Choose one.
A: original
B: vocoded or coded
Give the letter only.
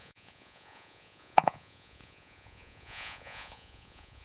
B